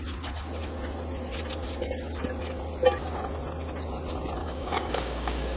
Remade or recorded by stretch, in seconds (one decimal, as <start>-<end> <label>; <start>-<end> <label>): 0.0-4.4 recorded; 4.4-5.6 remade